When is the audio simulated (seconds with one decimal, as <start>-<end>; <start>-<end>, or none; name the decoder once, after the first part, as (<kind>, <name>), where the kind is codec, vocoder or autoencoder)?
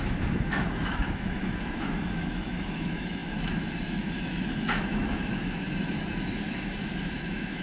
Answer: 0.0-7.6 (autoencoder, DAC-VAE)